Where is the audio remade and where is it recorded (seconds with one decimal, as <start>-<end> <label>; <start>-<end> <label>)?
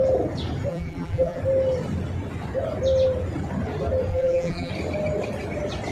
0.0-0.7 recorded; 0.7-1.4 remade; 1.4-4.1 recorded; 4.1-4.7 remade; 4.7-5.9 recorded